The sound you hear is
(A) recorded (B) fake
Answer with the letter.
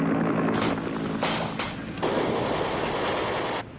A